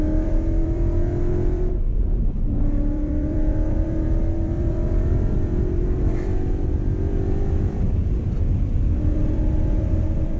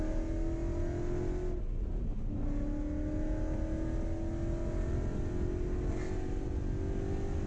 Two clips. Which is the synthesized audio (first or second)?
first